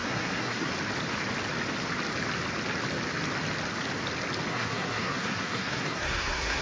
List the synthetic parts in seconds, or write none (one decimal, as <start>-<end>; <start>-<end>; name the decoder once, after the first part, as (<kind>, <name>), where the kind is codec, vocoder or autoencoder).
0.0-0.7 (codec, SNAC); 4.5-6.6